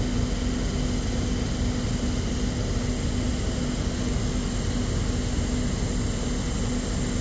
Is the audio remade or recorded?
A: recorded